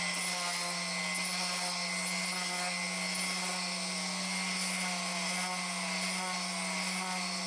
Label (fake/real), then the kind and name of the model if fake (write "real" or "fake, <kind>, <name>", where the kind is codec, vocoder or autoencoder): real